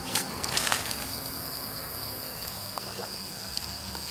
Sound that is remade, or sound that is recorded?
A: remade